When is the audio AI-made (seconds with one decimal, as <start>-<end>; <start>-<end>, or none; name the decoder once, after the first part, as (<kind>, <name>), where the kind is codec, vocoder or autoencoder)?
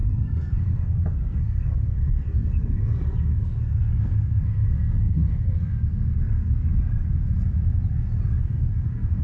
0.0-6.7 (codec, SNAC); 8.4-9.2